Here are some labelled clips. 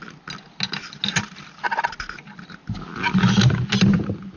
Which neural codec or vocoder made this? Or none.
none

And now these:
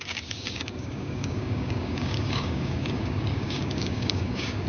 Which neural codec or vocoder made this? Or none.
codec, DAC